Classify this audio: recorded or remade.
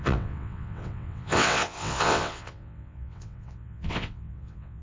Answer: remade